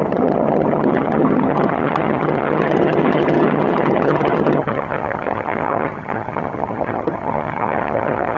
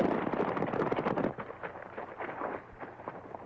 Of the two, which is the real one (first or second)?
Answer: second